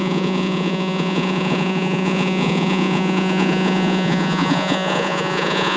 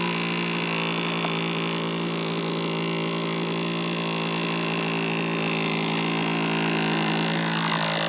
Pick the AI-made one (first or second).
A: first